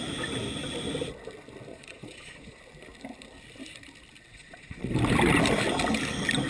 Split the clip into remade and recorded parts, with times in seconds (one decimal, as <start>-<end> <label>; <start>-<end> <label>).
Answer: 0.0-1.7 recorded; 1.7-2.6 remade; 2.6-4.3 recorded; 4.3-4.9 remade; 4.9-6.5 recorded